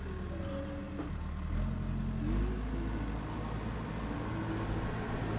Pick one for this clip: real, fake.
real